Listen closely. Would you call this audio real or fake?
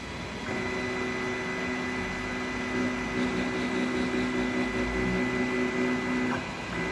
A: real